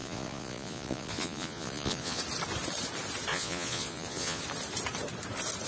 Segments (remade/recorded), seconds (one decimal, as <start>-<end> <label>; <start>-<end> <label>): 0.0-2.2 remade; 2.2-3.3 recorded; 3.3-4.4 remade; 4.4-5.7 recorded